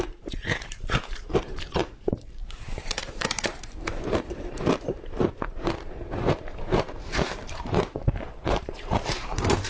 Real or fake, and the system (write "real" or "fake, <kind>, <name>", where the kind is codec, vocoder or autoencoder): fake, vocoder, BigVGAN v2